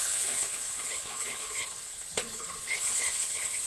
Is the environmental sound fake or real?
fake